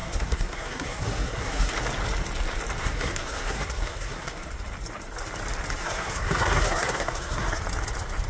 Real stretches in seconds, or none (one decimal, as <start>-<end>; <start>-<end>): 1.7-2.8; 4.5-5.8; 7.6-8.3